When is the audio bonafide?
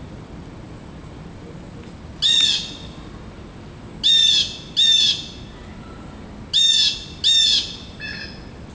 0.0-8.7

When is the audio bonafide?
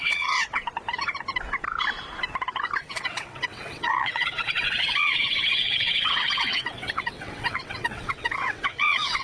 0.6-2.8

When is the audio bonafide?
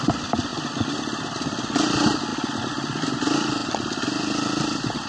none